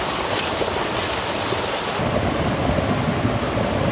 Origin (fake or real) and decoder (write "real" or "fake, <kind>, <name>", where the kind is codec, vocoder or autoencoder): real